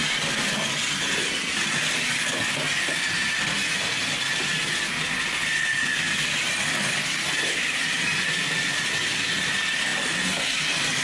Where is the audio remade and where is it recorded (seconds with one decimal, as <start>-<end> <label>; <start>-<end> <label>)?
0.0-11.0 recorded